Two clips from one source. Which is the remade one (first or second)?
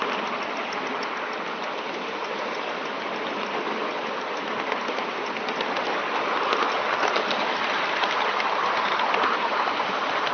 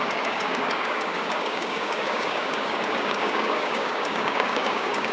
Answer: second